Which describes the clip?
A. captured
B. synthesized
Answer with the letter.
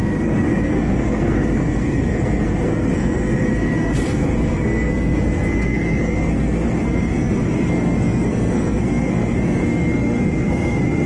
B